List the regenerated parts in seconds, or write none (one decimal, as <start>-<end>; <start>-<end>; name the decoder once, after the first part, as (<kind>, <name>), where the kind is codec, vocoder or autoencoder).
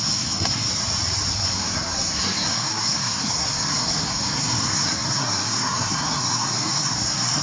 0.0-0.7 (codec, SNAC); 1.3-7.4